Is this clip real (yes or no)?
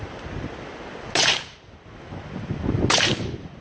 yes